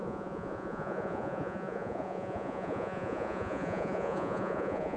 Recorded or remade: remade